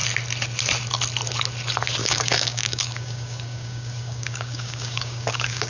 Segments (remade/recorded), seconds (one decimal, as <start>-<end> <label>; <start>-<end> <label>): 0.0-2.0 recorded; 2.0-5.7 remade